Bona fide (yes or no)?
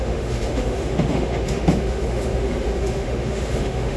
no